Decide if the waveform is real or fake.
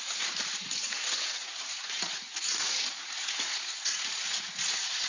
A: fake